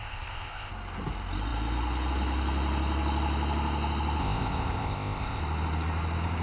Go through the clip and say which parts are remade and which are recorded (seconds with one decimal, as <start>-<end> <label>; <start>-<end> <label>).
0.0-0.7 remade; 0.7-4.2 recorded; 4.2-5.4 remade; 5.4-6.4 recorded